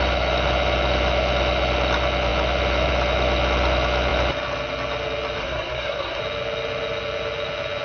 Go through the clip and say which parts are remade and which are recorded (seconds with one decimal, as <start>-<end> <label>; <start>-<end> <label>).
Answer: 0.0-5.4 recorded; 5.4-6.2 remade; 6.2-7.8 recorded